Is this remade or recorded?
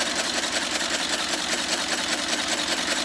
recorded